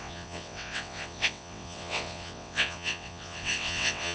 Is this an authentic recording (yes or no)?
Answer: no